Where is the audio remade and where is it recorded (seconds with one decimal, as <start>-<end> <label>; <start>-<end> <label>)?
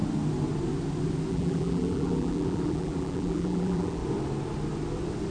0.0-1.3 recorded; 1.3-4.0 remade; 4.0-5.3 recorded